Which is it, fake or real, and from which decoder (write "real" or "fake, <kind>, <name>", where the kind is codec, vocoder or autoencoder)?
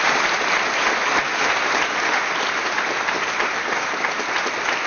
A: real